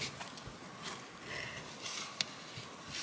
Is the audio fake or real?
real